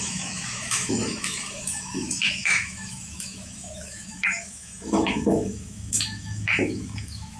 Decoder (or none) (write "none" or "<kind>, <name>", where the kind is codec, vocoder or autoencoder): autoencoder, DAC-VAE